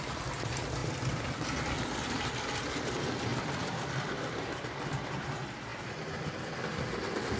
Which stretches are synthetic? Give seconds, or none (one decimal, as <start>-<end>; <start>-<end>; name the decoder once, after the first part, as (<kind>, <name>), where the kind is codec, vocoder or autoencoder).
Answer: none